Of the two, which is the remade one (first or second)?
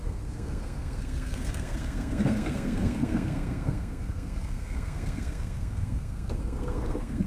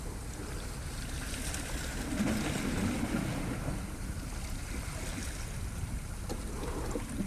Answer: first